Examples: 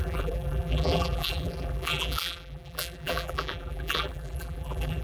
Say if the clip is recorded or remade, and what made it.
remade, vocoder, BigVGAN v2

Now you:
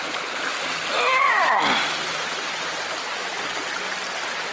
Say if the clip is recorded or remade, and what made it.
recorded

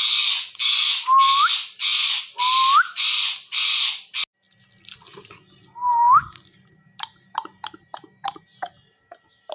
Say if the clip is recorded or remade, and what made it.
recorded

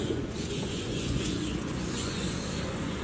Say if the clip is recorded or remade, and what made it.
remade, vocoder, Vocos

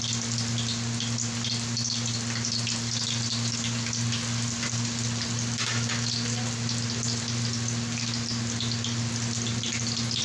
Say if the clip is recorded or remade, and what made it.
recorded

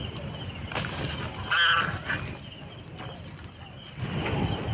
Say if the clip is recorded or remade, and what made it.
recorded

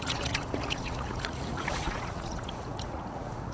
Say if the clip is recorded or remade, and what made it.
remade, vocoder, Vocos